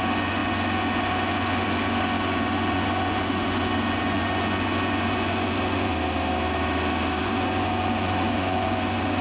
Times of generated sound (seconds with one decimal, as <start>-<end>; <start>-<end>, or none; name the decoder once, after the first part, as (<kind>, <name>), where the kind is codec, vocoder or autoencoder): 0.0-5.9 (vocoder, Vocos); 7.2-9.2

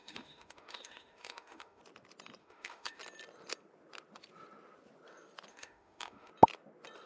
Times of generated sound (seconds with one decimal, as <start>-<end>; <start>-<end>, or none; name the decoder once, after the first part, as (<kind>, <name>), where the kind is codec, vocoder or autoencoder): 0.0-1.8 (autoencoder, DAC-VAE); 2.4-3.0; 5.5-6.3

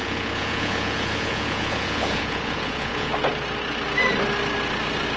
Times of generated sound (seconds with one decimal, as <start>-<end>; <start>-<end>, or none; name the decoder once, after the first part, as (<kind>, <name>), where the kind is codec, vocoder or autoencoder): 0.0-3.1 (vocoder, Vocos)

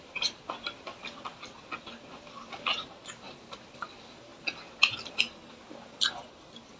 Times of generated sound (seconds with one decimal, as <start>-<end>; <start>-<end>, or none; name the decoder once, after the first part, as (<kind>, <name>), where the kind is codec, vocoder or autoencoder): none